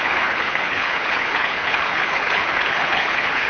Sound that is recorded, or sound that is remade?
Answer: remade